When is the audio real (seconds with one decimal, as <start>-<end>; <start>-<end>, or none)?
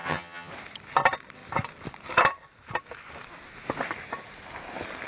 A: 0.5-5.1